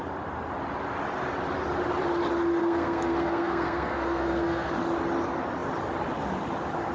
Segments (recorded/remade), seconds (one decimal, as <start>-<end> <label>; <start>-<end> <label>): 0.0-2.6 recorded; 2.6-4.7 remade; 4.7-6.9 recorded